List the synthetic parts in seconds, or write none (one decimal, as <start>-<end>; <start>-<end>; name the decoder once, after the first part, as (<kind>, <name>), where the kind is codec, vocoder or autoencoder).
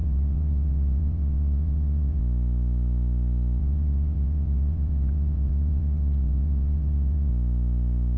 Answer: 0.0-2.2 (vocoder, WaveNeXt); 3.6-7.3